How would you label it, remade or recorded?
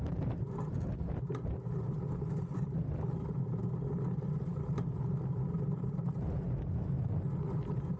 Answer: recorded